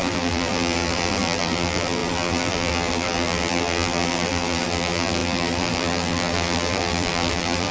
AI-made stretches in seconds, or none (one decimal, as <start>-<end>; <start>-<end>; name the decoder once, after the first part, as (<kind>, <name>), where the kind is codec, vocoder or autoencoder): 0.0-7.7 (vocoder, BigVGAN v2)